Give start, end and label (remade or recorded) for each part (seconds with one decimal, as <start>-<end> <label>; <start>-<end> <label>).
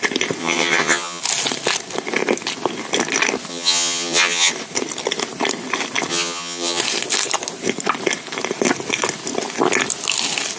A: 0.0-0.4 recorded; 0.4-1.2 remade; 1.2-3.5 recorded; 3.5-4.5 remade; 4.5-6.1 recorded; 6.1-6.8 remade; 6.8-10.6 recorded